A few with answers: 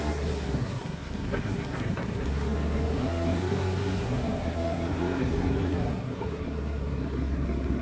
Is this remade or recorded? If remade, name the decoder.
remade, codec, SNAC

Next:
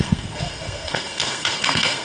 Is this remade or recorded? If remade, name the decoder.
remade, codec, SNAC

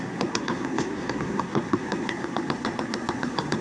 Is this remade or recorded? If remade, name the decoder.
remade, codec, SNAC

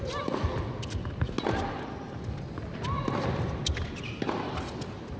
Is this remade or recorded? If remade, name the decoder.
recorded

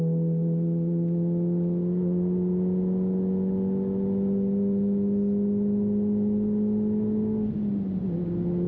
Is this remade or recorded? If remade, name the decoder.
recorded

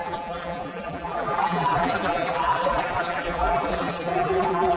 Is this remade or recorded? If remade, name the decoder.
remade, vocoder, BigVGAN v2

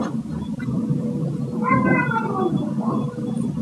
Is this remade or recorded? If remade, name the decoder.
recorded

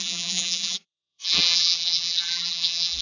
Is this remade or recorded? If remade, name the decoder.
remade, vocoder, BigVGAN v2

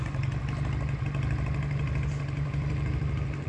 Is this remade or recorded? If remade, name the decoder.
recorded